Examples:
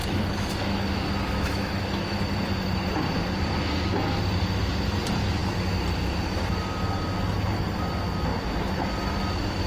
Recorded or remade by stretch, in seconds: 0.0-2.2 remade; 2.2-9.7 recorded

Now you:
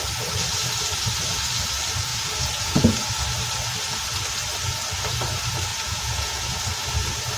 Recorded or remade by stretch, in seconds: 0.0-2.1 recorded; 2.1-3.1 remade; 3.1-5.7 recorded; 5.7-6.6 remade; 6.6-7.4 recorded

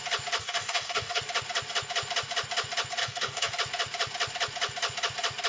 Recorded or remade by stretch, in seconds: 0.0-0.4 recorded; 0.4-1.2 remade; 1.2-3.0 recorded; 3.0-3.5 remade; 3.5-5.5 recorded

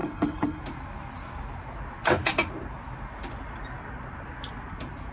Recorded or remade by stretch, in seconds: 0.0-0.6 remade; 0.6-5.1 recorded

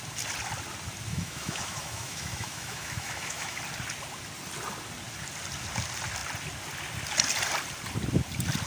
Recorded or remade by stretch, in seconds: 0.0-1.1 recorded; 1.1-3.6 remade; 3.6-8.7 recorded

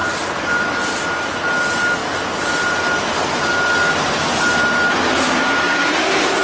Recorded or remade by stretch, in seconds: 0.0-0.8 remade; 0.8-6.4 recorded